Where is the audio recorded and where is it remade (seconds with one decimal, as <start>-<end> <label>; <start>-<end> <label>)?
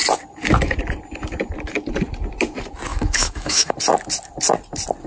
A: 0.0-2.9 recorded; 2.9-3.7 remade; 3.7-5.1 recorded